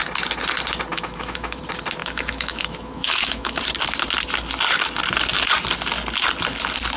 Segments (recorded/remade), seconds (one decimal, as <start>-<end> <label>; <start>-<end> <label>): 0.0-0.9 recorded; 0.9-1.6 remade; 1.6-2.0 recorded; 2.0-3.6 remade; 3.6-7.0 recorded